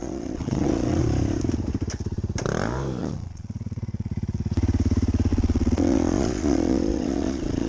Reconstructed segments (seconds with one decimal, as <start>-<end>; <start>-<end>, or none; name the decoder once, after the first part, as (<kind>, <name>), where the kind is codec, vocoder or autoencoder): 0.0-1.0 (vocoder, Vocos); 3.0-4.1; 5.3-7.7